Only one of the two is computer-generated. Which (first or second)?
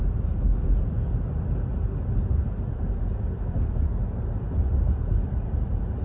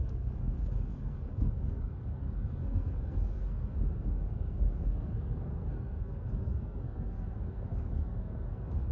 second